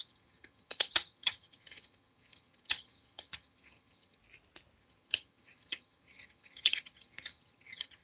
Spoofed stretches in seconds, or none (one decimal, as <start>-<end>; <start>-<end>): 0.0-4.2; 4.8-8.0